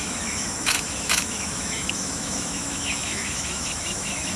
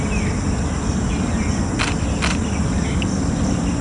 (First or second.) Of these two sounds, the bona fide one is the second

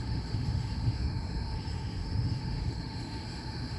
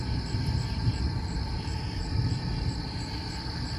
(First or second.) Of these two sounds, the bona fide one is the second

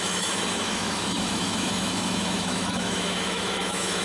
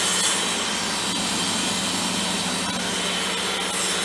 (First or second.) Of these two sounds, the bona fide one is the second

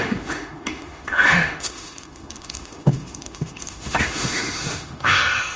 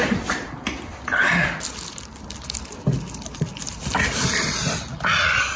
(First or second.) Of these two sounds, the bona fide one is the second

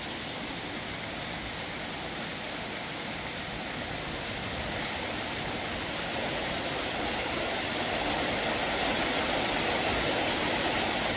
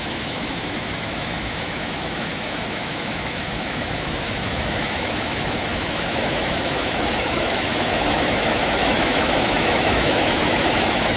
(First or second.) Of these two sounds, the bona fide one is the first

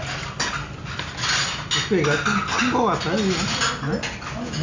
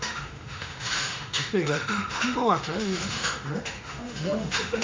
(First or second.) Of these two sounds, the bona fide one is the first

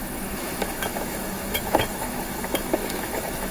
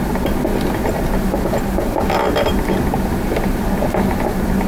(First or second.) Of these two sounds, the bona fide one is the second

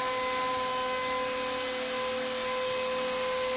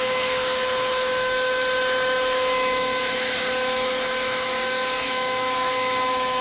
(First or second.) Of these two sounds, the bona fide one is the first